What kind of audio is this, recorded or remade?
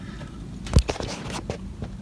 recorded